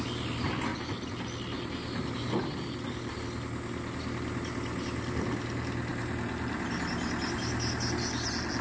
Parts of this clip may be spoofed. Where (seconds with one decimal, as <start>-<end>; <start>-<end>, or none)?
none